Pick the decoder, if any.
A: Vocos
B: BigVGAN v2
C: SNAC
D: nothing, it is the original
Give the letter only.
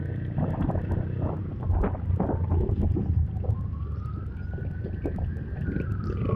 D